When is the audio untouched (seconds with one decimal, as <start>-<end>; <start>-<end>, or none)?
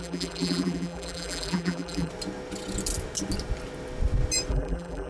2.1-4.5